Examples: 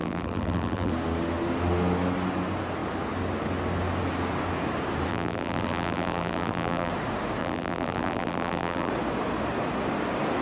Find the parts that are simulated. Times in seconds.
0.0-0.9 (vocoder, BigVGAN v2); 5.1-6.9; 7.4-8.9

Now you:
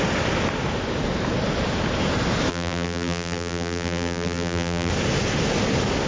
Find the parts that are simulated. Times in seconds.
2.5-4.9 (vocoder, BigVGAN v2)

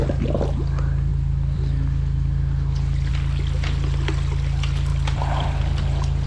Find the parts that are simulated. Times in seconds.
1.1-3.1 (vocoder, BigVGAN v2); 4.9-5.6

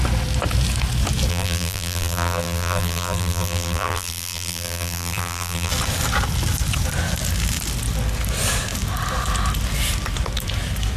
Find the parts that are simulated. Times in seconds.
1.3-5.7 (vocoder, BigVGAN v2)

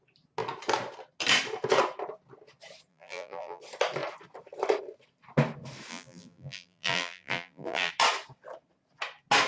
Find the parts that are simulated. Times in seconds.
2.9-3.6 (vocoder, BigVGAN v2); 5.9-7.9

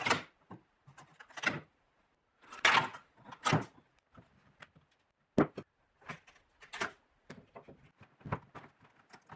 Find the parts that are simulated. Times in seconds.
none

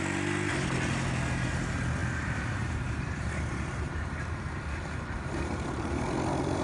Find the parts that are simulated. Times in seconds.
2.0-6.0 (vocoder, BigVGAN v2)